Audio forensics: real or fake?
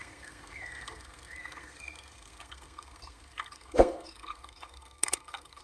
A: fake